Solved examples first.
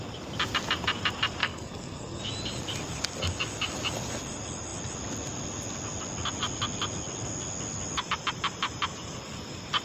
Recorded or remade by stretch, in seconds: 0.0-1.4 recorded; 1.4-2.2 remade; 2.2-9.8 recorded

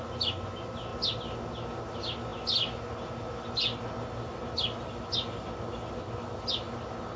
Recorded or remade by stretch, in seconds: 0.0-7.2 recorded